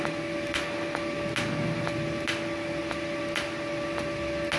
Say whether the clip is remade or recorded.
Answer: recorded